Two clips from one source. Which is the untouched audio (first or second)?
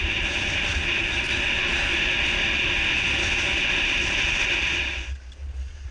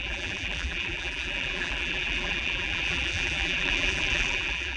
first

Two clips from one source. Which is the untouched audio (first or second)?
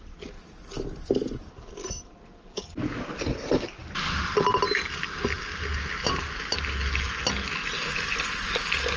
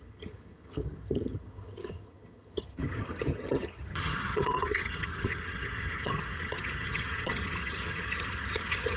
first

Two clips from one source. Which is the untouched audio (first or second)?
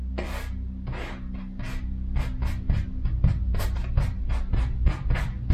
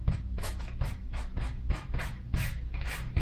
first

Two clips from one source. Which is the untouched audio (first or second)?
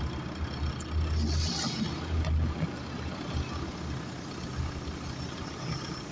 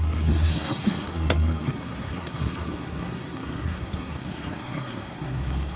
first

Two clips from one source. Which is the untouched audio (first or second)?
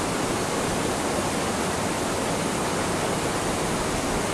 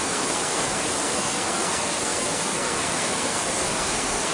first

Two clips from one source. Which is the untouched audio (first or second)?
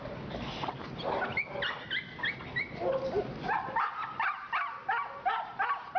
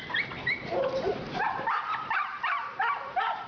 first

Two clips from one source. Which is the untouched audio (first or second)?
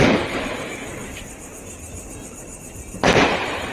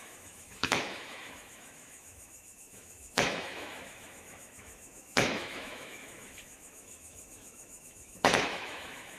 first